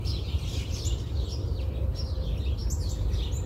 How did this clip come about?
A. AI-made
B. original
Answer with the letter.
B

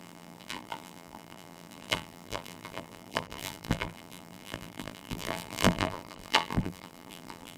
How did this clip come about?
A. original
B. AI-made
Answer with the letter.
B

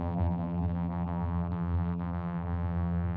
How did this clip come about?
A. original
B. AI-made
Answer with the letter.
B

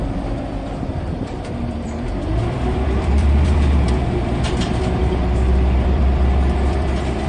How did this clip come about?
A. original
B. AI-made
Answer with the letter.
B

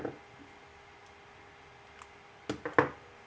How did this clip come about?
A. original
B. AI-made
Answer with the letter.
A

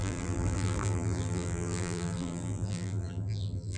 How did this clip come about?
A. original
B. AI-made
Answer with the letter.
B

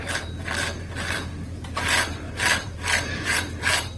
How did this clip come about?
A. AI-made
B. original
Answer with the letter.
A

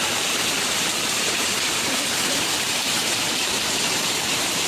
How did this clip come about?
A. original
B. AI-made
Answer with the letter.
B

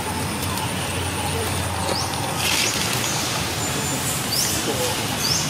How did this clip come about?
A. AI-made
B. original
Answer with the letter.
B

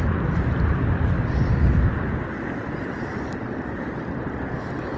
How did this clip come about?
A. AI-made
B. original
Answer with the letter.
A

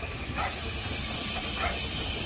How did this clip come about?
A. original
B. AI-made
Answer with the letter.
A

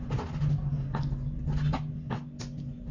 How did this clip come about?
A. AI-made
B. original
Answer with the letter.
B